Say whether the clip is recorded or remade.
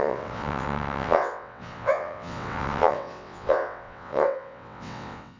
remade